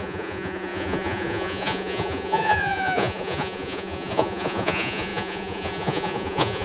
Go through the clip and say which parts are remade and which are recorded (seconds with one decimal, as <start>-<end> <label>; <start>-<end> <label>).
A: 0.0-6.6 remade